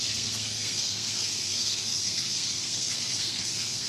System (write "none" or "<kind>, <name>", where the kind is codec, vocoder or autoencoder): codec, SNAC